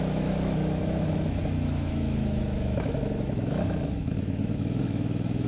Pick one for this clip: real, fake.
fake